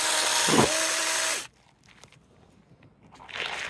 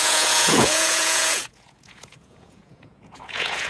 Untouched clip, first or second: first